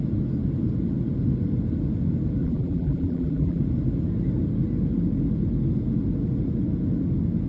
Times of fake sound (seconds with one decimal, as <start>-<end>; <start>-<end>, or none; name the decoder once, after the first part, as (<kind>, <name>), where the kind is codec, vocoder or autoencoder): 2.4-3.6 (vocoder, BigVGAN v2)